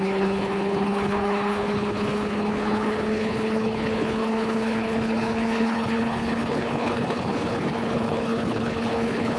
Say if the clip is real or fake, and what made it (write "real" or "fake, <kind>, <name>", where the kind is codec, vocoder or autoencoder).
fake, codec, HILCodec